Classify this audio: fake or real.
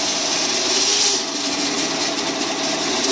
real